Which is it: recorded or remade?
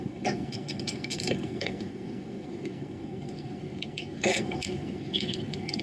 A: remade